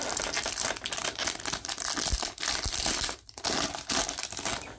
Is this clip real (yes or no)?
yes